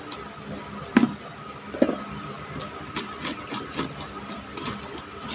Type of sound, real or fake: real